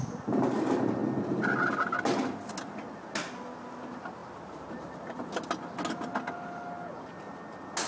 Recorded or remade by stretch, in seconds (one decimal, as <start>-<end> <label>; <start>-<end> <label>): 0.0-7.9 recorded